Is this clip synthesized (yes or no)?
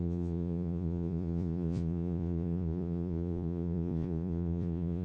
yes